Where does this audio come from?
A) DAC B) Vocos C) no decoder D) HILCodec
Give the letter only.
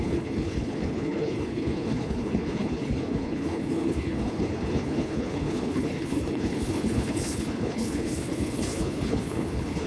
D